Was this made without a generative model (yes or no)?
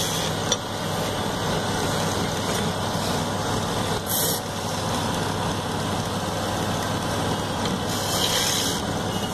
yes